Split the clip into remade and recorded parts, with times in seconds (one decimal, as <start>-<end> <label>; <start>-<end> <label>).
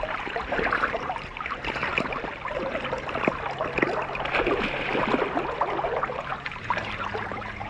0.0-1.9 remade; 1.9-5.8 recorded; 5.8-7.7 remade